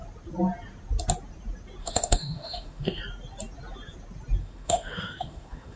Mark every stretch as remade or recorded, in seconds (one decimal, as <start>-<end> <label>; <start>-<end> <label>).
0.0-1.8 recorded; 1.8-3.0 remade; 3.0-4.4 recorded; 4.4-5.8 remade